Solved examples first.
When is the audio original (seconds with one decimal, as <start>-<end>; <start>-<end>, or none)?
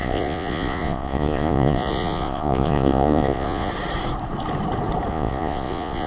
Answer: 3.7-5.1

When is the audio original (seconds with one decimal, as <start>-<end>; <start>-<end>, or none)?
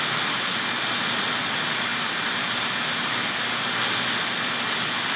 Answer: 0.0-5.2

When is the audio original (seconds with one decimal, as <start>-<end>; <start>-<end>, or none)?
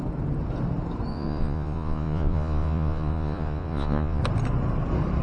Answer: 0.0-1.1; 4.2-5.2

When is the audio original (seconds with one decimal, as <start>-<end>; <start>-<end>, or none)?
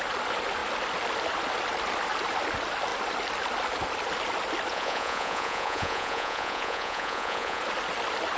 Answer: 0.0-4.7; 7.6-8.4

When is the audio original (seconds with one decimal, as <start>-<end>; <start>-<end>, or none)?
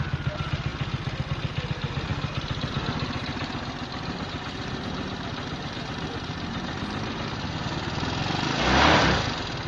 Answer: 0.0-9.7